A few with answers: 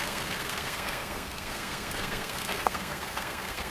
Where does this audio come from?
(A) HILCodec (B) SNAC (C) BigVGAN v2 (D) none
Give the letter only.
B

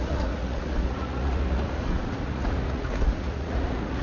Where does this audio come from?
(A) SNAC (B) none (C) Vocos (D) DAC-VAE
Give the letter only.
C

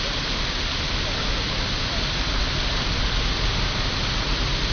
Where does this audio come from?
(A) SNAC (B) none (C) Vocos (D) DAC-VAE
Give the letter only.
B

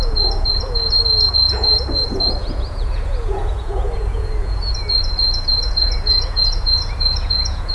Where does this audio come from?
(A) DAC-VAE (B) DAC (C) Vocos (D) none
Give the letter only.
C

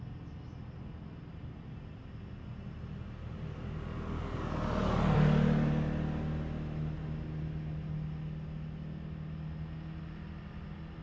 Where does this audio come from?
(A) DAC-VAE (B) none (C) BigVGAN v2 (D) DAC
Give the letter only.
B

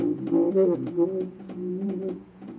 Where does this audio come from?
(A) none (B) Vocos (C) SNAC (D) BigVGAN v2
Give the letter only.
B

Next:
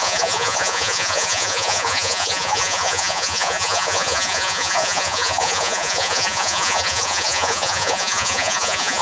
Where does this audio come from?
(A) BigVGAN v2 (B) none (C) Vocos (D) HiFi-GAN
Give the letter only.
C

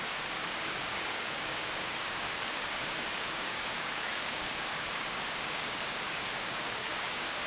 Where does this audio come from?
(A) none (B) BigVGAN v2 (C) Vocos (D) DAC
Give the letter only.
D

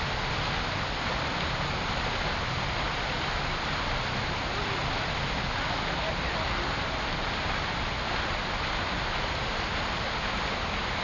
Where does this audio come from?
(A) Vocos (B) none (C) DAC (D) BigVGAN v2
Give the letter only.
B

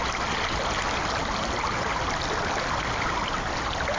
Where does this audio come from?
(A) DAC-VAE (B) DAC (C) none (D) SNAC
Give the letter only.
C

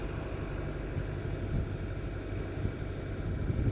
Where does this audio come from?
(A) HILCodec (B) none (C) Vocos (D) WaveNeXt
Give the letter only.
B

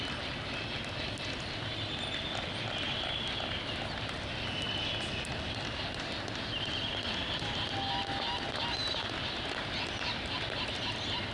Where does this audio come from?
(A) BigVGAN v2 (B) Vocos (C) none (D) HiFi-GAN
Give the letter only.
C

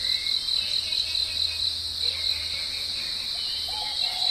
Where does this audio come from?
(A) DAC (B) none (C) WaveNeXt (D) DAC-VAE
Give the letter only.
B